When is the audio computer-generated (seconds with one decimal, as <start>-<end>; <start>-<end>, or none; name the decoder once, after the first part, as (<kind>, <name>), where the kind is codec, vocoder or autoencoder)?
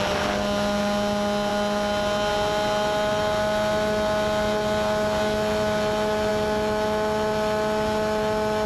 none